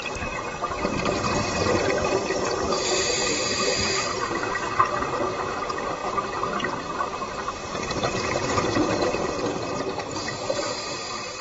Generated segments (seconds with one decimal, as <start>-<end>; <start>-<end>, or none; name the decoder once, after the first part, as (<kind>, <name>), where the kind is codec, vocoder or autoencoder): 0.0-11.4 (vocoder, BigVGAN v2)

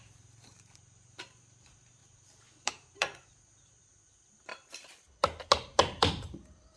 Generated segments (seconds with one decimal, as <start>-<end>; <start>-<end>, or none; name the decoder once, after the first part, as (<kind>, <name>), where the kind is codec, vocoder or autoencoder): 0.0-4.5 (vocoder, BigVGAN v2); 6.1-6.8

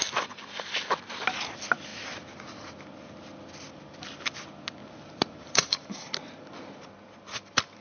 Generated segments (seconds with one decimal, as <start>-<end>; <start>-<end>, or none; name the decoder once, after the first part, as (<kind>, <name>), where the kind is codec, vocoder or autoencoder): 4.8-6.9 (vocoder, BigVGAN v2)

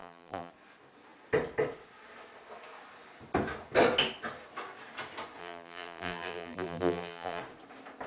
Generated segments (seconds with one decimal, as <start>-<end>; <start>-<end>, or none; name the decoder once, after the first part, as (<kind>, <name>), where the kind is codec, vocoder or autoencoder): 0.0-0.5 (vocoder, BigVGAN v2); 5.4-7.4